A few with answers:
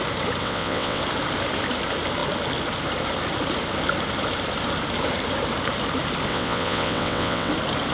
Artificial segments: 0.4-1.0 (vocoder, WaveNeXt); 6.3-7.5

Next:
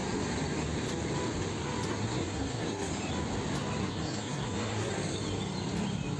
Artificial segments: 1.9-2.9 (codec, SNAC); 3.8-4.9

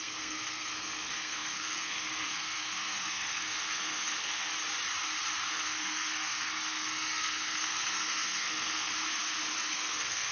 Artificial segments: 0.0-4.5 (codec, SNAC); 5.5-8.9; 9.7-10.3

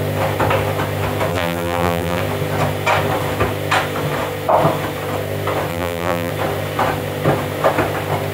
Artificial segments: 1.3-2.2 (vocoder, BigVGAN v2); 5.7-6.3

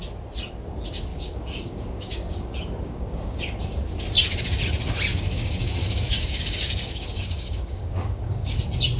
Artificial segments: 1.1-3.4 (codec, DAC); 5.1-8.6

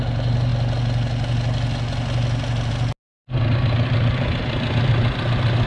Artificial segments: none

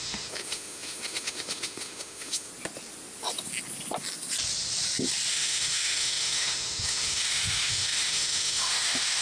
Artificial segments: 0.0-2.5 (autoencoder, DAC-VAE); 5.3-9.2